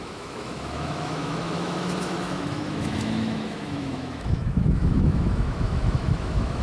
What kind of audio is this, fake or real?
fake